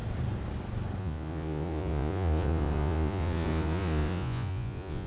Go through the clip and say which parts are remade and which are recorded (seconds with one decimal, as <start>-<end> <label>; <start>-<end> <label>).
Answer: 0.0-1.0 recorded; 1.0-5.1 remade